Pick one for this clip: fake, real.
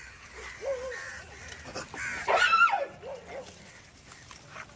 real